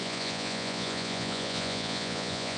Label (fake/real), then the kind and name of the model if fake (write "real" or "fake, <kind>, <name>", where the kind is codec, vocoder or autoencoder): fake, vocoder, Vocos